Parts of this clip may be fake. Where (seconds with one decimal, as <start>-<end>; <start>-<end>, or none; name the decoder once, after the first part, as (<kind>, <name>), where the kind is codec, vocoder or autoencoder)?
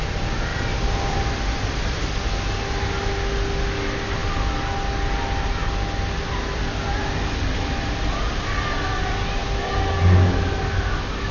none